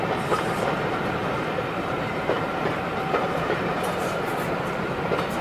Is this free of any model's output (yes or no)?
no